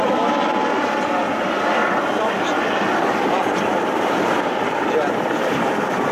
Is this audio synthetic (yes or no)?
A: yes